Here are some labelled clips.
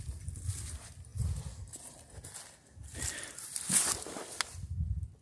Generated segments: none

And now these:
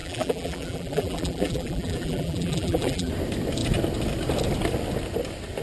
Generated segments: 0.0-3.1 (vocoder, BigVGAN v2)